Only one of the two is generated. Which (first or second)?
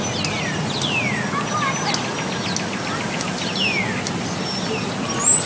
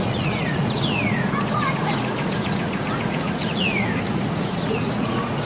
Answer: second